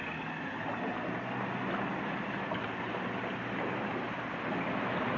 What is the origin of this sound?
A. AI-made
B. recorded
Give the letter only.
B